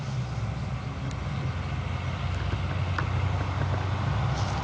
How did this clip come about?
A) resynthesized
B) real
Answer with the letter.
B